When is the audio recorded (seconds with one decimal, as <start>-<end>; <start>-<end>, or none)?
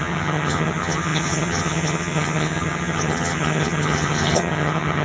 none